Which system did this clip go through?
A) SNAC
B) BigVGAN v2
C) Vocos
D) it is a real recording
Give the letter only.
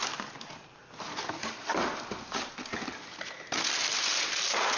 D